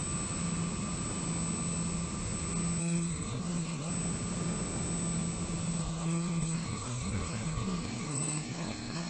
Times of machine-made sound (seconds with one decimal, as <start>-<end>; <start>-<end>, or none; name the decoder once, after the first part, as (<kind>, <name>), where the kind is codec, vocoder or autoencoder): 2.8-3.9 (codec, SNAC); 5.8-9.1